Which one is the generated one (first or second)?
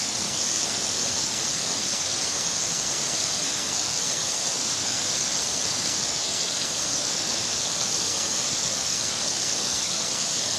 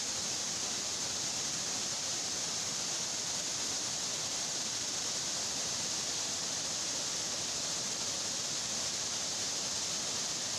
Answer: first